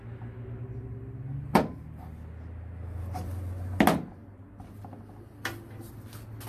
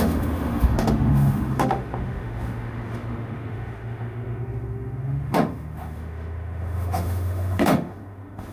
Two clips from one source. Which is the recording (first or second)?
first